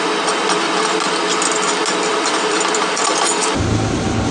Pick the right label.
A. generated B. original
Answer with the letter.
B